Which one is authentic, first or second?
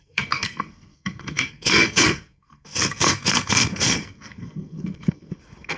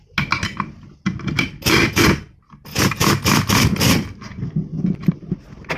second